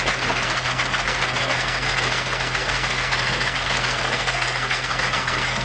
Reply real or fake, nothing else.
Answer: fake